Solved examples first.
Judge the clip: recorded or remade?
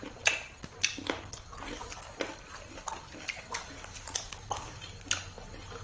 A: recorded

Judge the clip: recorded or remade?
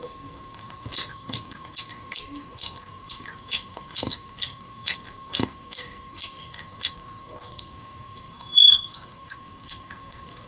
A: remade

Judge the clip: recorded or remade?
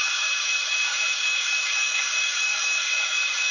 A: remade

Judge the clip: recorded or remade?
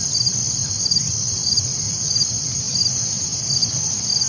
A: recorded